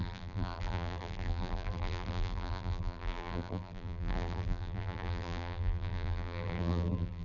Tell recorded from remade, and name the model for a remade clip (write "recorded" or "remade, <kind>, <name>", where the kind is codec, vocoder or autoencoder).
remade, vocoder, BigVGAN v2